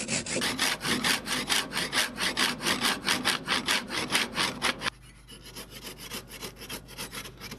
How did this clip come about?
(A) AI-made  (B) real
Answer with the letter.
B